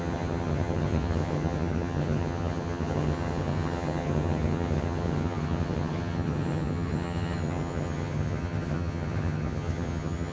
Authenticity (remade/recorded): remade